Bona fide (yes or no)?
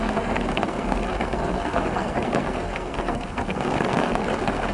no